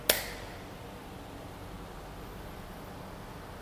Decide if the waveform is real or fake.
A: real